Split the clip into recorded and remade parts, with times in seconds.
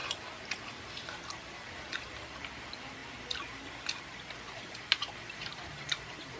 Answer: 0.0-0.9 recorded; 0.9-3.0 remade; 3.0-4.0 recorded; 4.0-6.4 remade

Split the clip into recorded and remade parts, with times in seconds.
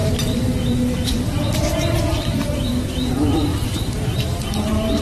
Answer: 0.0-5.0 remade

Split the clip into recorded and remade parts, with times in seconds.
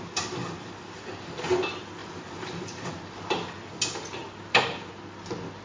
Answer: 0.0-0.4 recorded; 0.4-1.3 remade; 1.3-2.0 recorded; 2.0-3.3 remade; 3.3-5.6 recorded